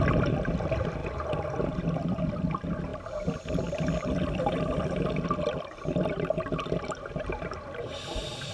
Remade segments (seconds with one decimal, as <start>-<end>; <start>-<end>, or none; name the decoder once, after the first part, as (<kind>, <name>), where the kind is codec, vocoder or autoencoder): 1.0-1.8 (vocoder, BigVGAN v2)